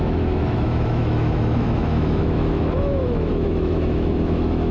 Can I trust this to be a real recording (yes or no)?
no